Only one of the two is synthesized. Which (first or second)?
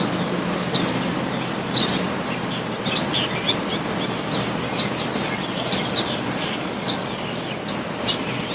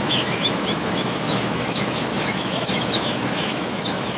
second